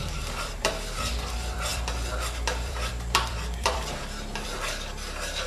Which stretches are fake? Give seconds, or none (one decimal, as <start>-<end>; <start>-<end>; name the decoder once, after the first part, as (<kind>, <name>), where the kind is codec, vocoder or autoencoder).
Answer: 0.0-5.5 (vocoder, BigVGAN v2)

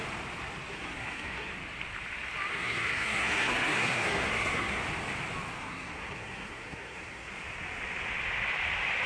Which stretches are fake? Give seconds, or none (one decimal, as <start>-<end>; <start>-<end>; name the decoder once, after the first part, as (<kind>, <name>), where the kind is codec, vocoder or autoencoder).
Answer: 0.7-1.5 (codec, SNAC); 2.5-4.8; 5.6-7.3